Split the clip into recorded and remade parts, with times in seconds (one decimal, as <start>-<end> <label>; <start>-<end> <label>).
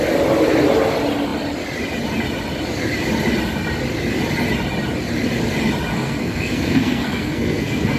0.0-5.9 recorded; 5.9-8.0 remade